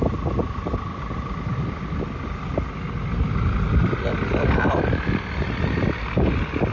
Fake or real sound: real